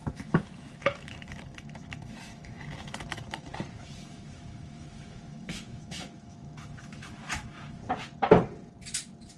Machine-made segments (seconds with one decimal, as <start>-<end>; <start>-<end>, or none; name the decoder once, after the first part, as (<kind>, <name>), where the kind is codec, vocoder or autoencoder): 0.0-3.5 (autoencoder, DAC-VAE); 4.0-7.8